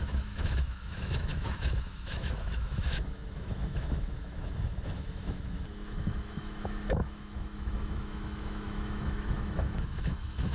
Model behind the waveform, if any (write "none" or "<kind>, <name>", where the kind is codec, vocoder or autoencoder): autoencoder, DAC-VAE